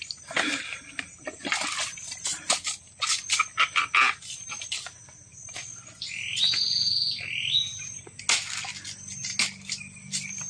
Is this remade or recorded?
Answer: recorded